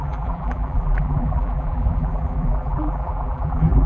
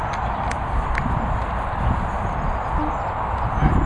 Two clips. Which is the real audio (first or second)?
second